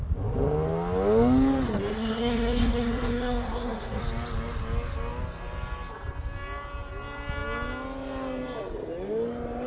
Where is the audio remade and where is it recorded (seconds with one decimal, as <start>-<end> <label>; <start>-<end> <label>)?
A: 0.0-1.9 recorded; 1.9-4.0 remade; 4.0-9.7 recorded